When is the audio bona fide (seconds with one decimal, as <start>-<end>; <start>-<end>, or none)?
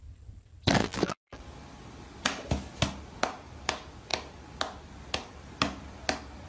0.0-0.8; 1.4-6.5